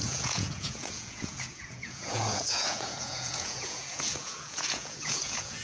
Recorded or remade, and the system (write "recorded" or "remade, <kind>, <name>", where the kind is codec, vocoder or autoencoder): remade, vocoder, Vocos